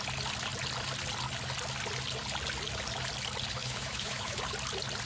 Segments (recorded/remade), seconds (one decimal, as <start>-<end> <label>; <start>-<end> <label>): 0.0-3.6 recorded; 3.6-4.4 remade; 4.4-5.0 recorded